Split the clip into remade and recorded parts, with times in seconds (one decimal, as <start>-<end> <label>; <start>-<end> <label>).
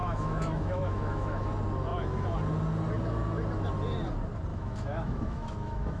0.0-1.5 remade; 1.5-4.5 recorded; 4.5-6.0 remade